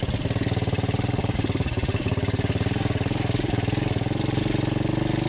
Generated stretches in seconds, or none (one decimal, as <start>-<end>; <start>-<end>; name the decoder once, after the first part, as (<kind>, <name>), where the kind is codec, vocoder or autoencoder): 1.2-4.4 (vocoder, BigVGAN v2)